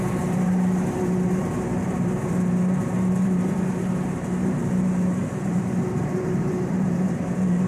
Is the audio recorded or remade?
remade